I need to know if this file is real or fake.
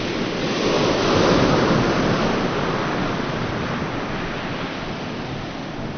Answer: real